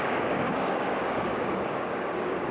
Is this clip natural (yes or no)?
no